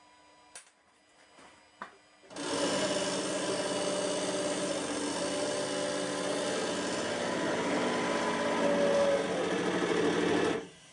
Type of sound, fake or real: real